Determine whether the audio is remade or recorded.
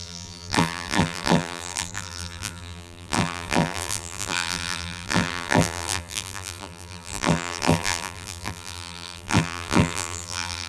remade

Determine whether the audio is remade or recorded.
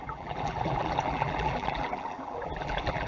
remade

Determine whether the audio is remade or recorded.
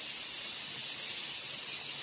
recorded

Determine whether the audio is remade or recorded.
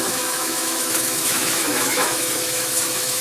remade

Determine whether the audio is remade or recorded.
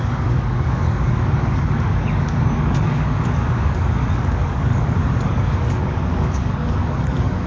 remade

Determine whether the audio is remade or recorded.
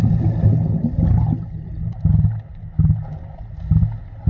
recorded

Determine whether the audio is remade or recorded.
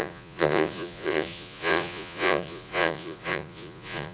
remade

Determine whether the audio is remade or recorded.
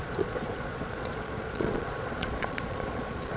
remade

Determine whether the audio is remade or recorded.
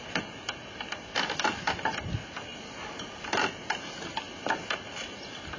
recorded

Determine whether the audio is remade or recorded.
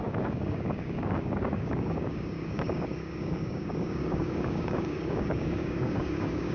remade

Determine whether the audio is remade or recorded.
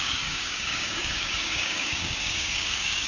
remade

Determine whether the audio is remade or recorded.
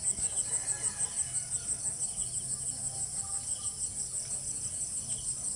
recorded